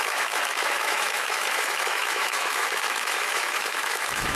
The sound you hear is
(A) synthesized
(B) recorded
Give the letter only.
A